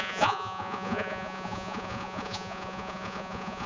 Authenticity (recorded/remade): remade